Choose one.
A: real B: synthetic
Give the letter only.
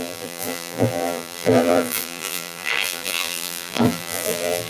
B